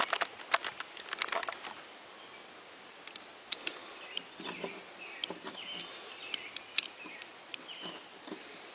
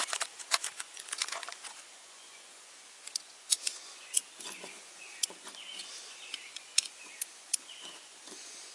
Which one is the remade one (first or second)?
second